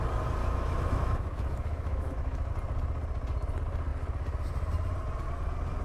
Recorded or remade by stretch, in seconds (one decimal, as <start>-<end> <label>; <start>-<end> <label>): 0.0-0.4 recorded; 0.4-2.5 remade; 2.5-5.8 recorded